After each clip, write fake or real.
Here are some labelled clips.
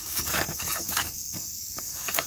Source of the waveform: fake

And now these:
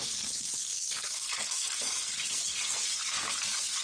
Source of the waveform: fake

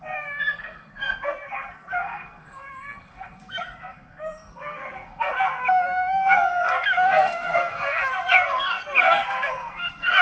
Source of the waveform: fake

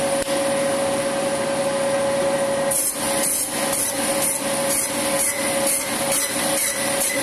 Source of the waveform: real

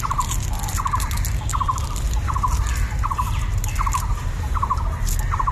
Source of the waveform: real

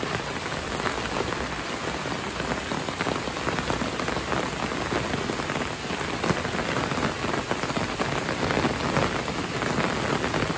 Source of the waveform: real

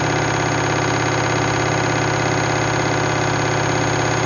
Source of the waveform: real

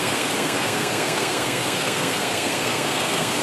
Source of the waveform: fake